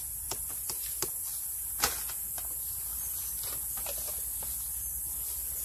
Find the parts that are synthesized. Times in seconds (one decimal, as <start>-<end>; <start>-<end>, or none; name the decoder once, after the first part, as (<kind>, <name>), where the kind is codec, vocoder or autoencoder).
0.0-1.3 (vocoder, BigVGAN v2); 4.7-5.6